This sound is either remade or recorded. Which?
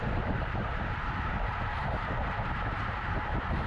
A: remade